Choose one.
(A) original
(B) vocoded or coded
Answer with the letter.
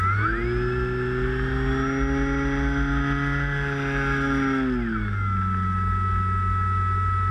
A